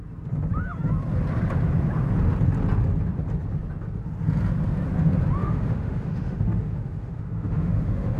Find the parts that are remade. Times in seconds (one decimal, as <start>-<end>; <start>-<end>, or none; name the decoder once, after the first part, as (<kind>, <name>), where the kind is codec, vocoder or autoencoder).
5.4-8.2 (autoencoder, DAC-VAE)